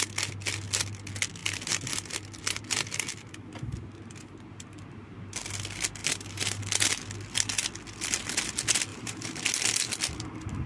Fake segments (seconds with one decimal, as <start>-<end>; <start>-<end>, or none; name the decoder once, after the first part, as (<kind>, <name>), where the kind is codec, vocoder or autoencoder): 6.0-6.6 (vocoder, BigVGAN v2); 8.9-9.4